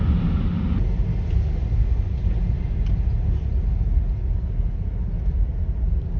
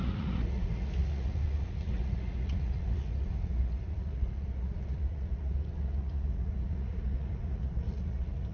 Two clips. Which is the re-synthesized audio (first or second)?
second